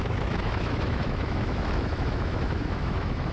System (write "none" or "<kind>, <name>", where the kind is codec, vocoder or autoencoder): autoencoder, DAC-VAE